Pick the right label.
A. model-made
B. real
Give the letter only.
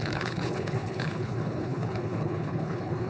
A